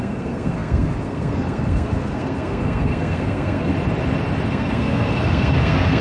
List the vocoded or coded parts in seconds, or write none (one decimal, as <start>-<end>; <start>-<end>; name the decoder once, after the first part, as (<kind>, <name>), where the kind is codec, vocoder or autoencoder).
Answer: 0.0-3.7 (codec, SNAC); 4.5-6.0